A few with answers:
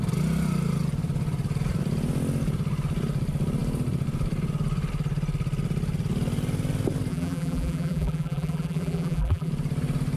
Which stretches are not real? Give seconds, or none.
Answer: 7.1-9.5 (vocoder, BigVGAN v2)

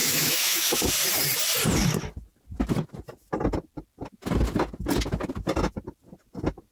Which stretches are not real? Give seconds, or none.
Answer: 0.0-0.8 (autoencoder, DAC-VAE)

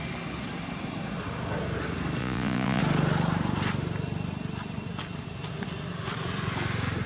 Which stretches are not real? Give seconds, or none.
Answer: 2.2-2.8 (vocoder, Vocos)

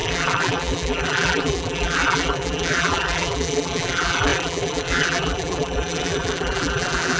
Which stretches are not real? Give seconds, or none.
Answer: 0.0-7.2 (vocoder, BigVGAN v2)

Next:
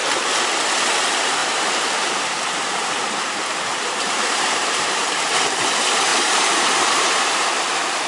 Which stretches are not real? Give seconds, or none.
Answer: 1.4-5.0 (vocoder, BigVGAN v2); 6.1-7.5

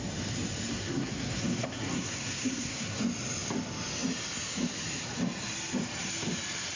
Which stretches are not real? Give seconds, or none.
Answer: 0.7-3.0 (codec, SNAC)